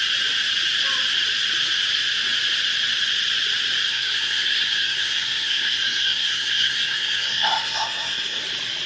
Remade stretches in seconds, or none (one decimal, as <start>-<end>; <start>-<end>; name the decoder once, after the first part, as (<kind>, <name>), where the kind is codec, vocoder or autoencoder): 3.9-8.4 (codec, SNAC)